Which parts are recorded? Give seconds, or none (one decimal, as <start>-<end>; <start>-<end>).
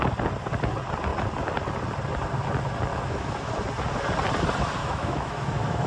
0.0-2.9; 3.5-4.8